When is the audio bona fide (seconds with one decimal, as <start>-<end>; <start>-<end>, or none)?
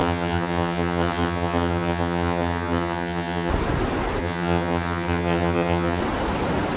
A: 3.5-4.2; 6.0-6.8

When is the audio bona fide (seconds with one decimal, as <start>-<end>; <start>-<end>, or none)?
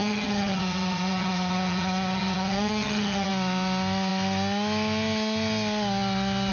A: 3.3-6.5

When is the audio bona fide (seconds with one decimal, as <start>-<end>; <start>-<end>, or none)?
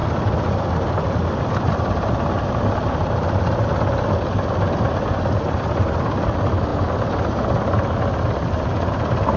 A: 0.0-9.4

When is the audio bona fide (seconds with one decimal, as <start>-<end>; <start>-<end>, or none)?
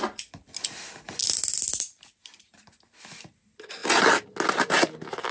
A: 0.0-5.3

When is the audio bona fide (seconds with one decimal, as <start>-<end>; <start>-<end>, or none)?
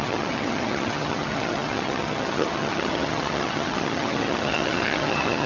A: none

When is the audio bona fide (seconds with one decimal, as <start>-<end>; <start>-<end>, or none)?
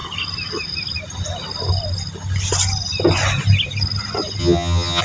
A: 0.0-4.4